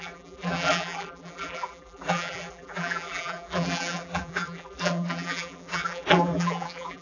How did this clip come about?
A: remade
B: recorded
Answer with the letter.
A